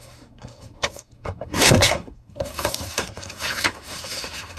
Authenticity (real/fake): fake